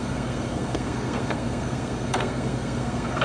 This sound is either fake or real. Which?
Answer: fake